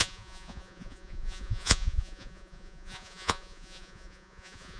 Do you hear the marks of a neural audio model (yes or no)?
yes